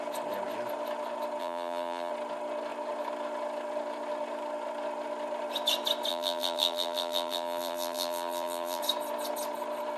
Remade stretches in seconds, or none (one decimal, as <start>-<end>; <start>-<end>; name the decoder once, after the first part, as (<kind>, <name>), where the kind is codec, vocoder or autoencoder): 1.4-2.1 (vocoder, BigVGAN v2); 6.1-8.8